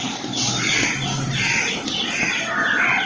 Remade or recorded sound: recorded